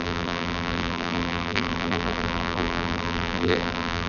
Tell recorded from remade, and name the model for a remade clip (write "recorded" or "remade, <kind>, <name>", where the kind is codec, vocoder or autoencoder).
remade, vocoder, BigVGAN v2